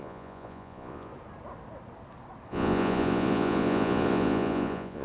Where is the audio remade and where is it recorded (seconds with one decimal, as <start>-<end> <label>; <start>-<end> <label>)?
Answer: 0.0-1.1 remade; 1.1-2.5 recorded; 2.5-5.0 remade